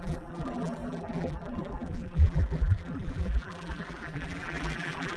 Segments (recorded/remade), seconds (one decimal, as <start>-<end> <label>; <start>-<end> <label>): 0.0-5.2 remade